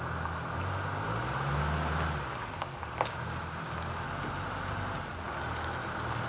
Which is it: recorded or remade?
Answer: recorded